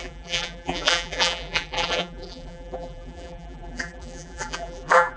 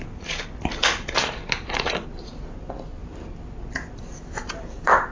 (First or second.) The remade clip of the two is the first